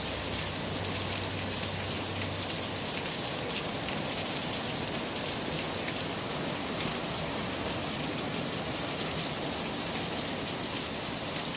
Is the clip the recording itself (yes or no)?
yes